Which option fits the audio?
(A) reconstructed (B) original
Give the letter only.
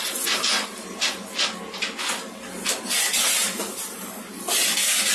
B